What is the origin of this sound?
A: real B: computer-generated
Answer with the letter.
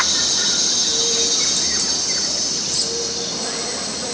A